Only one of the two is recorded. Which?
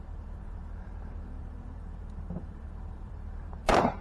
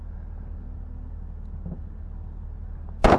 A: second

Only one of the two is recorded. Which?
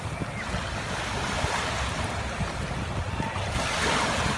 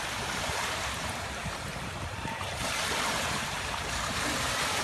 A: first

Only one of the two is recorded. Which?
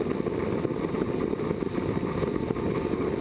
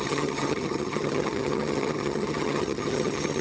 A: first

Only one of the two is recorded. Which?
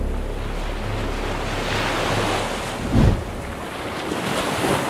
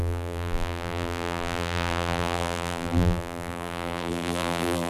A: first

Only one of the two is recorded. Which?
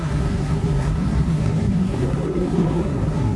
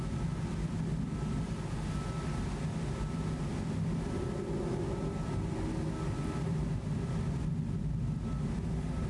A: second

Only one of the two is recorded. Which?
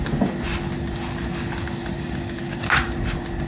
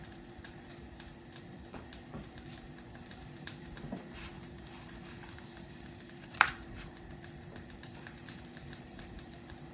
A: first